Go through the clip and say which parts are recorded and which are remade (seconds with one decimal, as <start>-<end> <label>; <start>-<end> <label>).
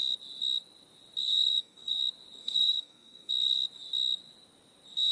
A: 0.0-1.2 recorded; 1.2-2.0 remade; 2.0-2.4 recorded; 2.4-3.3 remade; 3.3-5.1 recorded